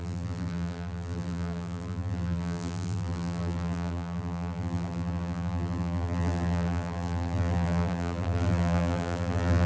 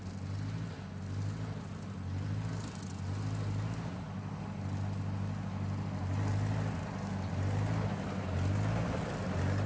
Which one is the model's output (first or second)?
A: first